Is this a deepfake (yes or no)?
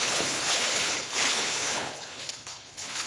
yes